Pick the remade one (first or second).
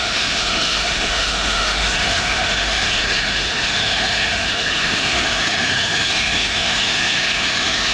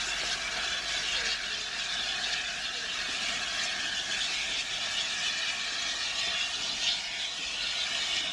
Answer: first